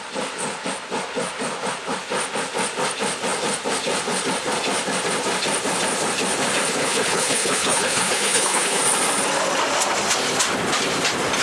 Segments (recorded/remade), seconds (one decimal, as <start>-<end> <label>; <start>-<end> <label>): 0.0-6.8 recorded; 6.8-8.8 remade; 8.8-11.4 recorded